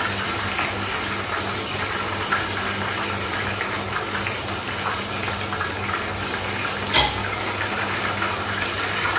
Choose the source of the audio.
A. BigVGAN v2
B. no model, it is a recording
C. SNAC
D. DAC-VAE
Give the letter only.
B